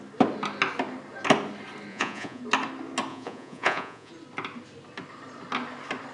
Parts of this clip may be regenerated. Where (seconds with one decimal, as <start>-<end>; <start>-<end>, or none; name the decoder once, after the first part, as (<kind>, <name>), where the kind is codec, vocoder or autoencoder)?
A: 1.9-2.4 (vocoder, Vocos); 3.1-4.1